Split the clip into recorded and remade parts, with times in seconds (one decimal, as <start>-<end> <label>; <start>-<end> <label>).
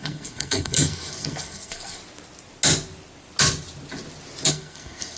0.0-2.0 remade; 2.0-4.5 recorded; 4.5-5.2 remade